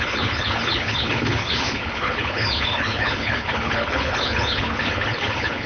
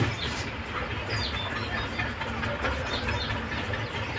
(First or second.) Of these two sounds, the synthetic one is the first